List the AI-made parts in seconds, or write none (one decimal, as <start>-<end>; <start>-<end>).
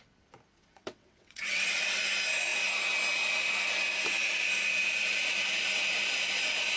0.5-2.0